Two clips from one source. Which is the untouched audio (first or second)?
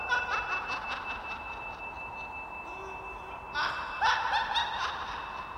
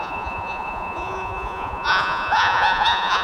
first